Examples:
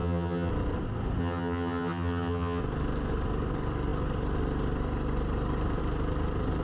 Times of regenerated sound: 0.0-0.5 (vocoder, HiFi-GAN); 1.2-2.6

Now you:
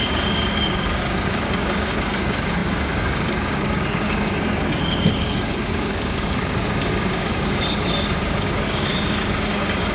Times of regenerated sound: 0.0-9.9 (codec, DAC)

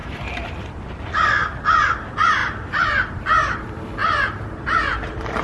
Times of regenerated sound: 0.0-0.6 (vocoder, BigVGAN v2); 2.4-3.1; 4.0-5.4